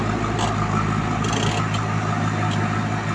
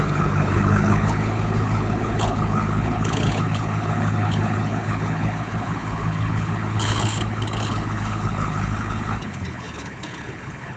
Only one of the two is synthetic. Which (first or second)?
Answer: second